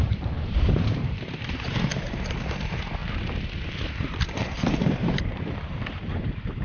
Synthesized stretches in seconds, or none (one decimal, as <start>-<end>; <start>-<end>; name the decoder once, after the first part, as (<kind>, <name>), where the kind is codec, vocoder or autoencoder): 0.0-3.0 (vocoder, BigVGAN v2); 3.7-6.6

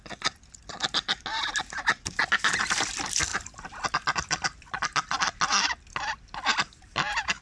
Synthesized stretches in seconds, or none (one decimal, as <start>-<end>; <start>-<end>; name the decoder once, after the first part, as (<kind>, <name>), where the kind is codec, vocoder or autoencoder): none